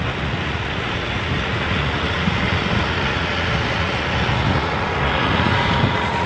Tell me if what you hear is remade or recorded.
remade